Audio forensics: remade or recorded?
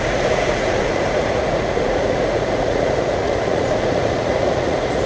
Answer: remade